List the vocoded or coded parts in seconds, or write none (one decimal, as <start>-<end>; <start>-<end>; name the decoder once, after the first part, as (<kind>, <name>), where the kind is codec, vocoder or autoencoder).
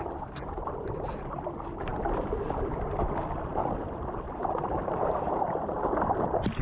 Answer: 3.5-5.8 (vocoder, BigVGAN v2)